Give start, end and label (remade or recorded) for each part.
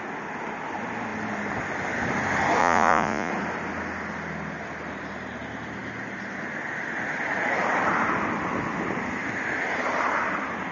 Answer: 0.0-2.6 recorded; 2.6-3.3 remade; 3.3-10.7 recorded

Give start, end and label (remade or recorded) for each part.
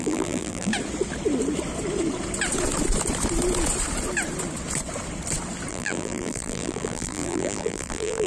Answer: 0.0-0.7 remade; 0.7-5.7 recorded; 5.7-8.3 remade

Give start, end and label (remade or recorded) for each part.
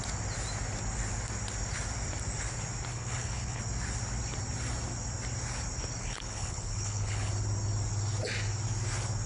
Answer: 0.0-2.9 recorded; 2.9-3.6 remade; 3.6-6.0 recorded; 6.0-7.3 remade; 7.3-9.3 recorded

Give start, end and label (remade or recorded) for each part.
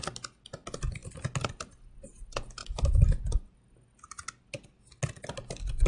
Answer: 0.0-5.9 recorded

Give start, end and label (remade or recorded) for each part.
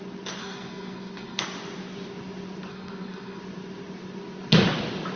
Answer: 0.0-0.4 recorded; 0.4-1.4 remade; 1.4-2.7 recorded; 2.7-3.4 remade; 3.4-5.2 recorded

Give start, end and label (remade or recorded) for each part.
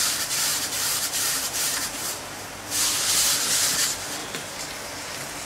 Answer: 0.0-0.5 recorded; 0.5-2.7 remade; 2.7-4.2 recorded; 4.2-4.7 remade; 4.7-5.5 recorded